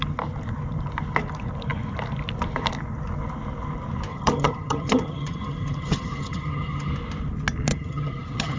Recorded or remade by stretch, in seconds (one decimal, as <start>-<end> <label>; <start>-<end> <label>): 0.0-4.1 recorded; 4.1-6.9 remade; 6.9-7.7 recorded; 7.7-8.6 remade